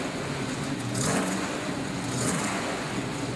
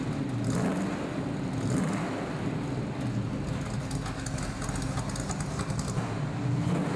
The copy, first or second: first